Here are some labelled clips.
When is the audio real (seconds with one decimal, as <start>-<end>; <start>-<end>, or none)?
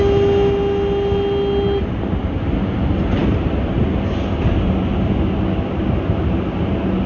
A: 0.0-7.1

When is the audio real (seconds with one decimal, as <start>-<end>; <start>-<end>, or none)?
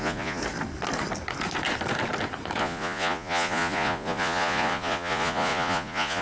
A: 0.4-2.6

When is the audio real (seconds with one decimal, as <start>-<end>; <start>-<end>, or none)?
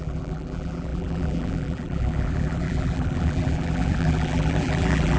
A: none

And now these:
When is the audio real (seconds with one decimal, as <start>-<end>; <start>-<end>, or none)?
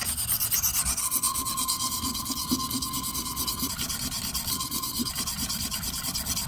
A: 0.0-1.0; 3.7-4.5; 5.1-6.5